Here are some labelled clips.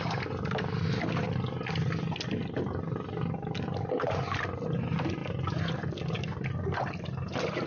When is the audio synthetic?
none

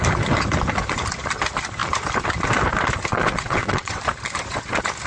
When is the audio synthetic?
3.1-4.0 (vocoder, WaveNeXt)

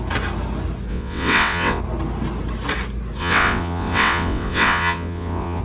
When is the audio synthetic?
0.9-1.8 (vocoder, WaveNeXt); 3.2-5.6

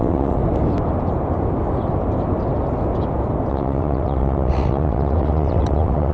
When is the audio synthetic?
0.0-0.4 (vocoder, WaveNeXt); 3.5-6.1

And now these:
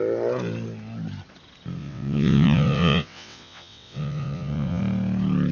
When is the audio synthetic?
1.8-4.8 (vocoder, WaveNeXt)

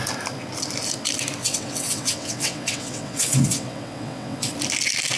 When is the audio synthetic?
1.4-4.5 (vocoder, WaveNeXt)